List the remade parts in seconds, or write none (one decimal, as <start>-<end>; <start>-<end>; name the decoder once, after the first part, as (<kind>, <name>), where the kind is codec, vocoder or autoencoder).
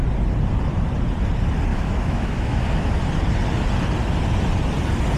1.7-3.0 (autoencoder, DAC-VAE)